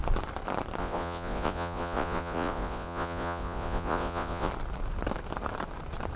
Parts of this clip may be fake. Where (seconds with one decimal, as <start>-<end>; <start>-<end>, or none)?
0.8-4.5